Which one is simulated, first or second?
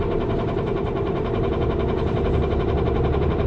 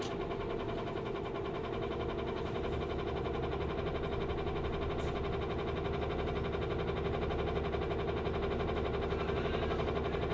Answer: first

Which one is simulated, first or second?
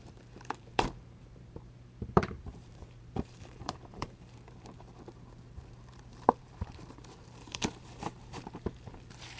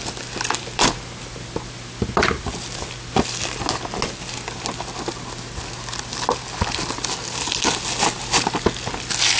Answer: first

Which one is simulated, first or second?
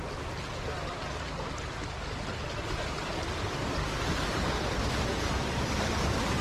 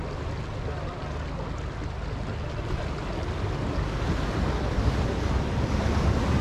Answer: first